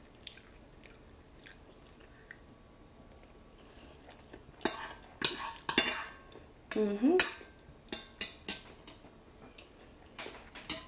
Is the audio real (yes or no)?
yes